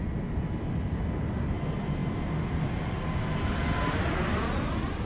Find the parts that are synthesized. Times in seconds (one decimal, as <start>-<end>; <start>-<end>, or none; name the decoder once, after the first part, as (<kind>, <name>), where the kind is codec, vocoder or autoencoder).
none